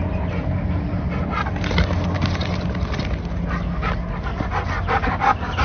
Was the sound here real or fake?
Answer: real